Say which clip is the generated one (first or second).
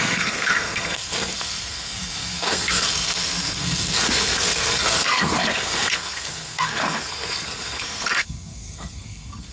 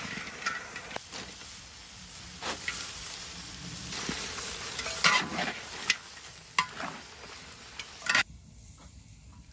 first